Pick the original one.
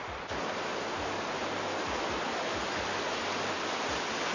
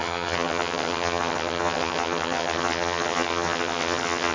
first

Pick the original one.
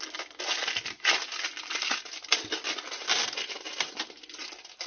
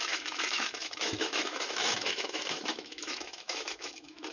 first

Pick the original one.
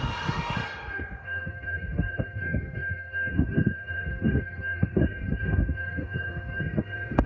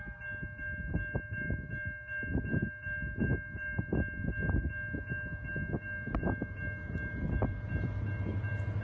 second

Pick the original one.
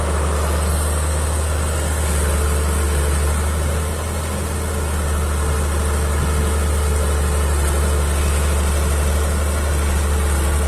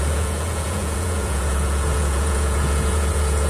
first